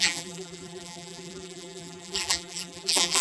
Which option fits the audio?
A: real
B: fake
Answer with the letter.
B